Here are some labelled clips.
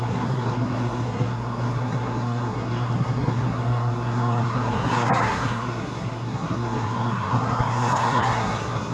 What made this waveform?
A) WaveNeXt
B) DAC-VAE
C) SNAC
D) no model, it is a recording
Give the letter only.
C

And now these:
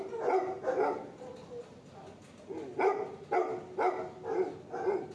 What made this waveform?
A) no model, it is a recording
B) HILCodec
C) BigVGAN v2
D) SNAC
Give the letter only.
A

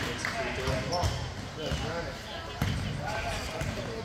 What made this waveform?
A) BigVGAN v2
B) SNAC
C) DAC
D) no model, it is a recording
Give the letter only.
D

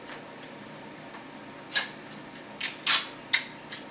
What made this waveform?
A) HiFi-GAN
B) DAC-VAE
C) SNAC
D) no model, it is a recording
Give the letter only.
D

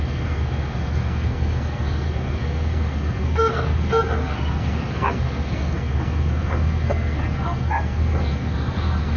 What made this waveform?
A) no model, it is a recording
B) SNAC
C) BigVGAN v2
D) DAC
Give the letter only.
B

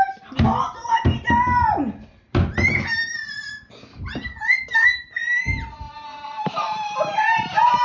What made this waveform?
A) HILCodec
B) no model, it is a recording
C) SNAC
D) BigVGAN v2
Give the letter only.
B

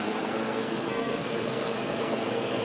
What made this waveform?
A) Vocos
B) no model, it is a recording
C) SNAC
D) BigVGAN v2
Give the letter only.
C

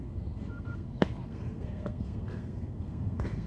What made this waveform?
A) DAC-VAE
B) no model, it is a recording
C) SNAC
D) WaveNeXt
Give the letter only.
C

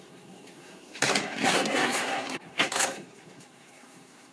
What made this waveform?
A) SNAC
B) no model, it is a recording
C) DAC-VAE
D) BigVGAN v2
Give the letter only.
A